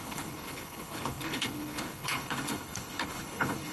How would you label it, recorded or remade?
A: remade